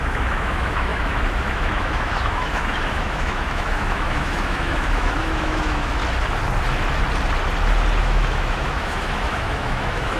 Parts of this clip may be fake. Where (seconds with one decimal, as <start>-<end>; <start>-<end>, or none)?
0.0-6.0; 8.0-10.2